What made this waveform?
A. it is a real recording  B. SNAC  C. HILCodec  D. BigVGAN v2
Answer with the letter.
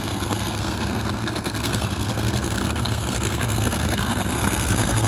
B